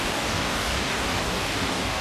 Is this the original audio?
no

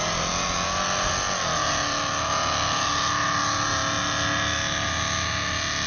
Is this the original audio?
yes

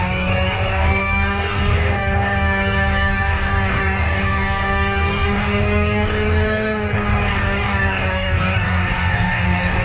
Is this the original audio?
no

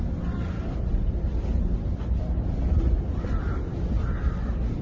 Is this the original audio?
yes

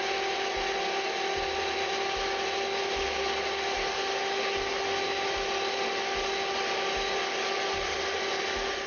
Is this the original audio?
yes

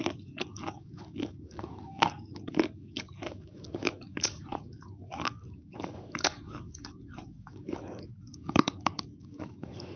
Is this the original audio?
no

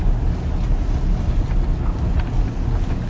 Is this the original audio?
yes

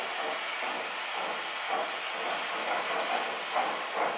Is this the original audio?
yes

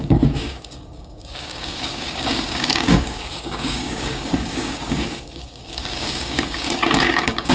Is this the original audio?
no